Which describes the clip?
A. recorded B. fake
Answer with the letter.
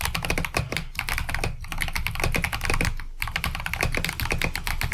A